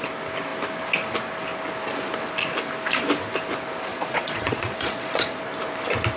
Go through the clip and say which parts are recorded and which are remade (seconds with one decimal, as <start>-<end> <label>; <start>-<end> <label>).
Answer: 0.0-3.9 recorded; 3.9-5.4 remade; 5.4-6.2 recorded